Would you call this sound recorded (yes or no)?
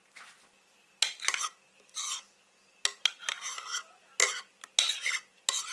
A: yes